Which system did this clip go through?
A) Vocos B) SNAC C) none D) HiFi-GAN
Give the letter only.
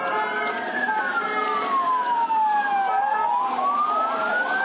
C